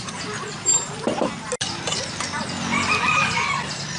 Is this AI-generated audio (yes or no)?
no